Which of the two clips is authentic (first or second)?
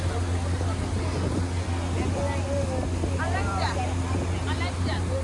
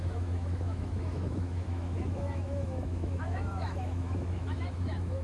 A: first